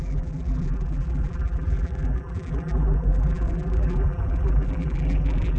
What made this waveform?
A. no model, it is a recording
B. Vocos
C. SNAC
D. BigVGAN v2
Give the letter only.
D